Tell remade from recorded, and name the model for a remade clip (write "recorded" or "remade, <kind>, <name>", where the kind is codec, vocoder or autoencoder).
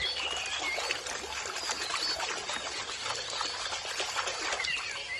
recorded